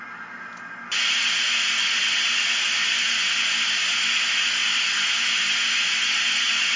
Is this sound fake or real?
real